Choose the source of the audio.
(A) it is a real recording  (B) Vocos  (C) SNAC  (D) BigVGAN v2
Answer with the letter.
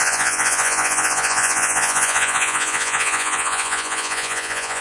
B